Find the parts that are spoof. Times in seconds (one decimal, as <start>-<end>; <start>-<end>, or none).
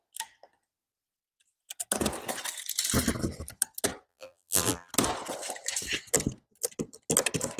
4.1-4.9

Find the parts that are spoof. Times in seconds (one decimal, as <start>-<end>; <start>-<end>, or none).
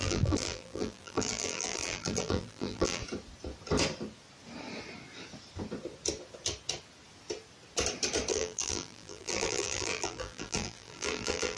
0.0-3.0; 8.3-11.6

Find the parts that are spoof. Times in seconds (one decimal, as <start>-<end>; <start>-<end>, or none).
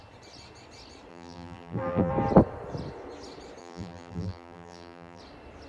1.1-2.1; 3.6-5.2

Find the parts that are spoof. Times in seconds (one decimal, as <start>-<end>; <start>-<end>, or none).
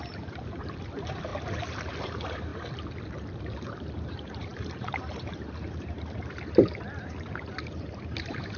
0.0-1.3; 2.0-2.5; 3.4-8.6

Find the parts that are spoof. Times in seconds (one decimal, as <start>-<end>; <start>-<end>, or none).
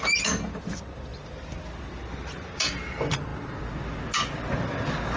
1.1-2.9; 3.3-5.2